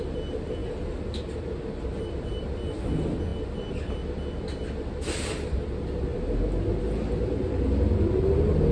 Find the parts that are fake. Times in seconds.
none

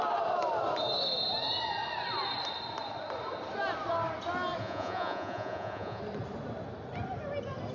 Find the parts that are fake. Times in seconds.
4.6-6.0 (vocoder, Vocos)

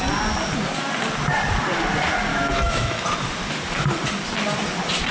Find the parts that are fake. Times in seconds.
2.3-3.0 (autoencoder, DAC-VAE)

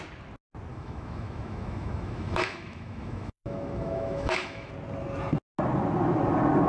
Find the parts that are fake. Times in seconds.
0.7-4.7 (autoencoder, DAC-VAE)

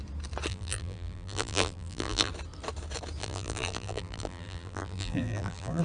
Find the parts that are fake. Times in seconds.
0.5-2.3 (vocoder, BigVGAN v2); 3.2-5.8

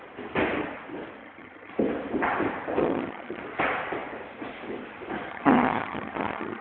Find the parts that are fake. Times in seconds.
1.2-1.7 (vocoder, HiFi-GAN); 2.8-3.4; 5.3-6.6